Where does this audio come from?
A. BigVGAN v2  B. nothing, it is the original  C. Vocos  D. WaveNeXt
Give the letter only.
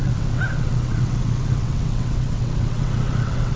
D